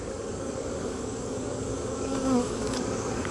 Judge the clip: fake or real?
fake